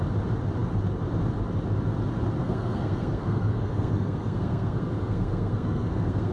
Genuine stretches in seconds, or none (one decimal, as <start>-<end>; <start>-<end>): 0.0-2.4